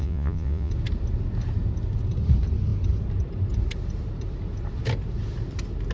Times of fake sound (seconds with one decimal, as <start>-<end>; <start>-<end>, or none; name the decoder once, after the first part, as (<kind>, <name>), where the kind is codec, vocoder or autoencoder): 0.0-0.7 (vocoder, Vocos)